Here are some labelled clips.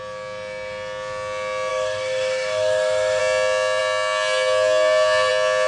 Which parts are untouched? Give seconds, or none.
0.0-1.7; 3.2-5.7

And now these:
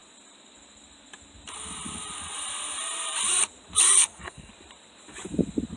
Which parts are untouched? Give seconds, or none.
0.0-4.0; 4.5-5.8

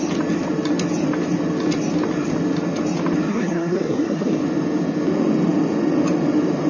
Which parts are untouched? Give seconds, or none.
0.0-3.3; 4.4-6.7

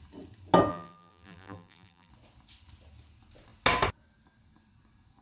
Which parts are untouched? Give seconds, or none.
0.0-0.7; 2.1-5.2

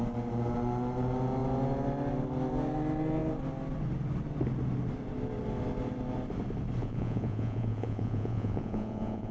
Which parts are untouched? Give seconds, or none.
0.0-6.8

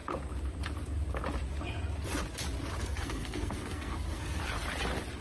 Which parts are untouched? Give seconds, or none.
0.0-2.8; 4.4-5.2

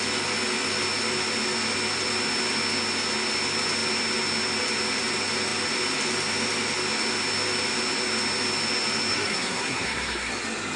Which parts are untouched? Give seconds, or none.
0.0-9.1; 10.3-10.8

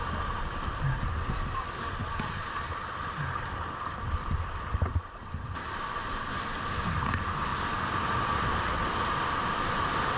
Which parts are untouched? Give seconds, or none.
0.0-10.2